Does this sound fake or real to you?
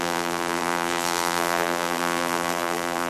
fake